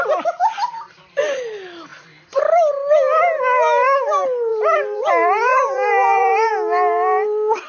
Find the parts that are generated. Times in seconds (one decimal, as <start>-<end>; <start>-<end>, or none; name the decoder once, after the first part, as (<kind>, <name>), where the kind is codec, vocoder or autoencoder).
0.4-1.2 (vocoder, BigVGAN v2); 1.9-2.4; 4.5-5.1; 5.5-6.5